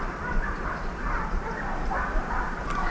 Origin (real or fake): fake